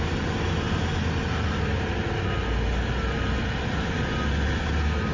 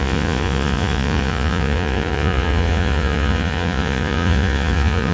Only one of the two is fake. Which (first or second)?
second